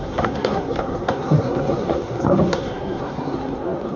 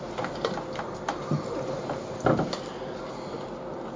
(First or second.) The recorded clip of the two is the second